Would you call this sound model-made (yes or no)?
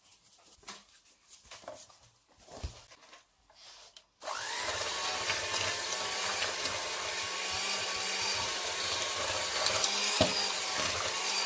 no